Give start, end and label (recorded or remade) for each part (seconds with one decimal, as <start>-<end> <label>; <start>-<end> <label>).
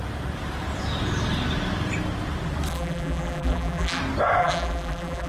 0.0-2.7 recorded; 2.7-4.0 remade; 4.0-4.4 recorded; 4.4-5.3 remade